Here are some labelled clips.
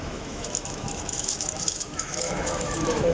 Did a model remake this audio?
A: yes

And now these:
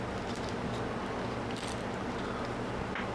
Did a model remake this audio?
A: no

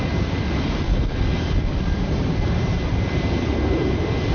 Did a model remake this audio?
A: yes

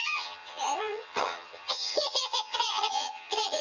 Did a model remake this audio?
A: yes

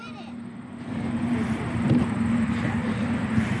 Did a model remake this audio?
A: yes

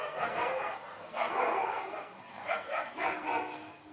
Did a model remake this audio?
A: yes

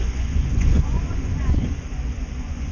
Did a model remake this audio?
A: yes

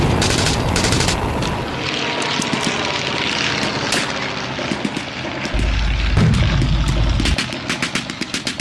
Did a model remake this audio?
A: no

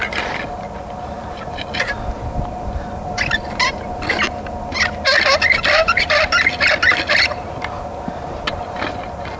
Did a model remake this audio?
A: no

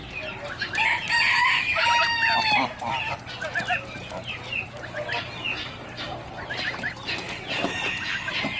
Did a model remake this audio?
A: no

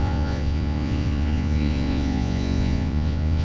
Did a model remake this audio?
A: yes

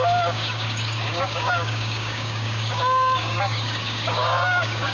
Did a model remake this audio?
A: yes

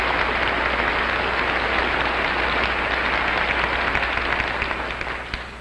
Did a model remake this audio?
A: no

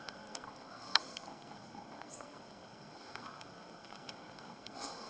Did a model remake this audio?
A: yes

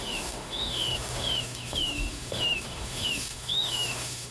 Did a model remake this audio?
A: yes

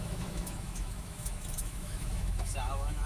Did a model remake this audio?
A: yes